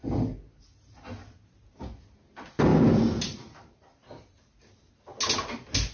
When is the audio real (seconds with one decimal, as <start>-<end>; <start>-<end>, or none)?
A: 0.0-2.7; 4.9-5.9